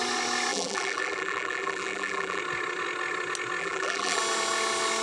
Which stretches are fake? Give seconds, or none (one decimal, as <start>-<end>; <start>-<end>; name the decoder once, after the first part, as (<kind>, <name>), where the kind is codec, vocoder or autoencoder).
0.5-2.4 (vocoder, BigVGAN v2); 3.6-4.2